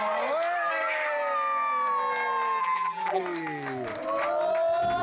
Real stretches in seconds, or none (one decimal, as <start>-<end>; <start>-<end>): 0.0-2.6; 3.2-5.0